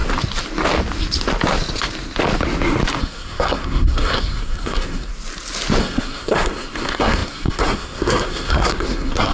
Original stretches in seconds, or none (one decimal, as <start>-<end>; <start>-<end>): 0.0-3.0; 5.1-5.8